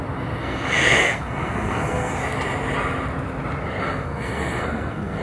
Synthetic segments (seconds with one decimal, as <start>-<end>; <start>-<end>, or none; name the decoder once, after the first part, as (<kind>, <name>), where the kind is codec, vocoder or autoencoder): 0.4-2.2 (codec, SNAC); 3.8-5.2